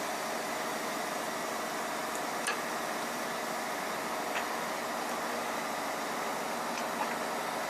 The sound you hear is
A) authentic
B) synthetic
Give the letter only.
A